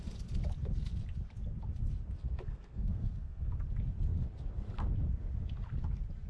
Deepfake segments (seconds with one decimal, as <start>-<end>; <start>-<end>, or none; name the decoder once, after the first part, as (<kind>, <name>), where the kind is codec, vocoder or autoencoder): 2.5-3.6 (codec, SNAC)